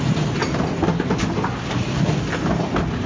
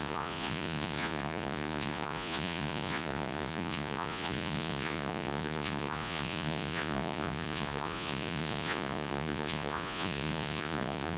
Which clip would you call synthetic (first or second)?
second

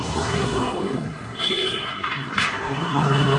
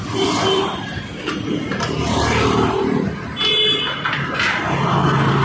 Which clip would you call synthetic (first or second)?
first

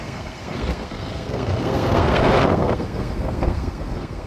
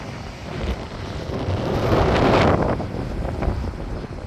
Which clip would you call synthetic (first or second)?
first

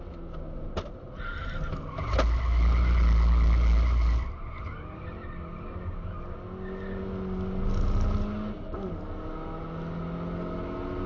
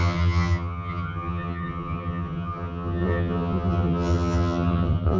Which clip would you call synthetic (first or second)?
second